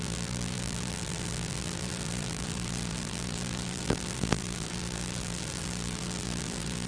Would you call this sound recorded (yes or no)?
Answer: no